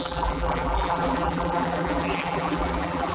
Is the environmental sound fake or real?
fake